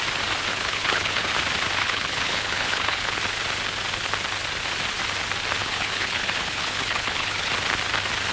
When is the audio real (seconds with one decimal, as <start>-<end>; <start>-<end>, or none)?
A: 0.0-0.5; 1.3-1.8; 3.2-5.6; 7.5-8.3